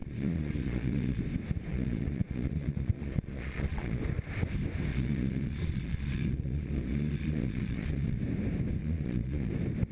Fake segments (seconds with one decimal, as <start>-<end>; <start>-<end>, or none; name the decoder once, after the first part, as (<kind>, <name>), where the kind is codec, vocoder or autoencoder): 0.0-1.2 (vocoder, Vocos); 1.7-4.0; 4.9-8.2; 8.8-9.5